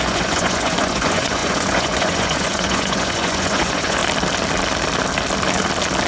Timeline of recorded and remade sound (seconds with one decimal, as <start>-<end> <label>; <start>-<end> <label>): 0.0-4.0 remade; 4.0-6.1 recorded